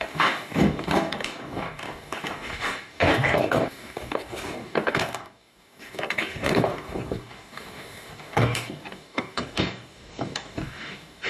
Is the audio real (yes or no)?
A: no